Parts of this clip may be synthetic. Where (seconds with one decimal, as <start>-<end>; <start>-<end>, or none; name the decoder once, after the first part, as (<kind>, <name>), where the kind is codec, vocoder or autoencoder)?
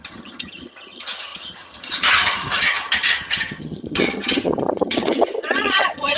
0.0-6.2 (vocoder, HiFi-GAN)